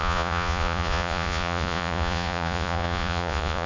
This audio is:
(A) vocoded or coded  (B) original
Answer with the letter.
A